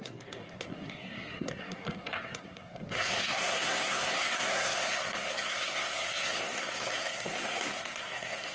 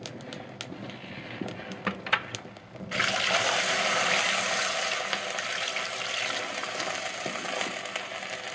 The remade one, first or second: first